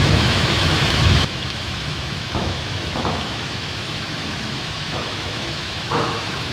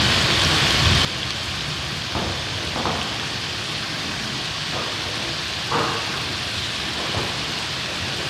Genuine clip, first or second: second